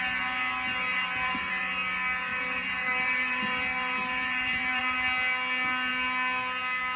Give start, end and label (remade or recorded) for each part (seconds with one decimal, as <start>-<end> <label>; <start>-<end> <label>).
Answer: 0.0-0.9 recorded; 0.9-1.6 remade; 1.6-2.3 recorded; 2.3-4.8 remade; 4.8-7.0 recorded